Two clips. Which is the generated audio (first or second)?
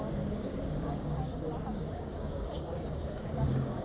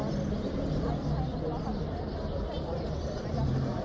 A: first